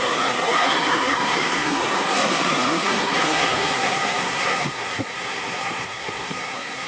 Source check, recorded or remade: remade